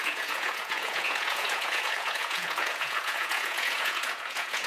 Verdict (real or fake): fake